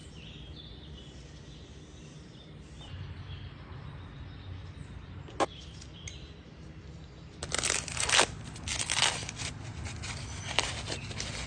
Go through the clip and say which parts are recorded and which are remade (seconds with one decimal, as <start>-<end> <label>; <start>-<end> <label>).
0.0-11.5 recorded